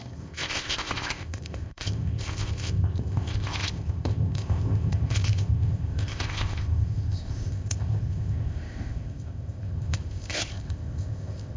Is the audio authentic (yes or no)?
no